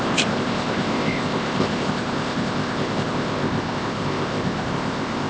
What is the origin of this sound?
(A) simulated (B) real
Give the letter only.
A